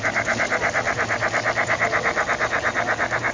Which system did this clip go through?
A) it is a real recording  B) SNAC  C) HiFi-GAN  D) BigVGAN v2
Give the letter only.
A